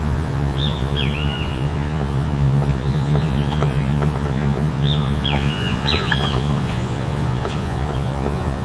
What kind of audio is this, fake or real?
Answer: fake